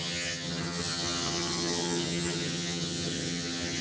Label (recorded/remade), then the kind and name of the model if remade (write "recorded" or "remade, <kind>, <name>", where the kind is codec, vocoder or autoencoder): remade, vocoder, HiFi-GAN